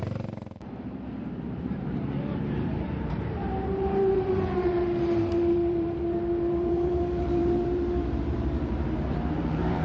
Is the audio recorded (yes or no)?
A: no